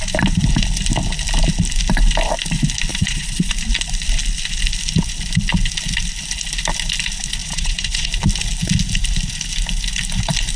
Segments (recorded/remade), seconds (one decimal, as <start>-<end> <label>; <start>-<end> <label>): 0.0-2.9 recorded; 2.9-3.5 remade; 3.5-7.4 recorded; 7.4-8.1 remade; 8.1-10.6 recorded